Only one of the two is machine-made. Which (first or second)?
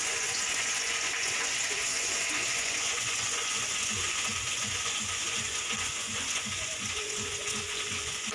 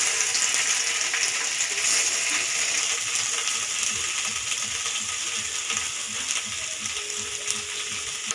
first